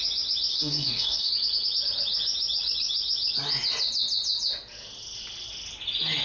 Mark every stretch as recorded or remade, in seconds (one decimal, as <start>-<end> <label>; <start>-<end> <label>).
0.0-0.5 recorded; 0.5-1.3 remade; 1.3-6.2 recorded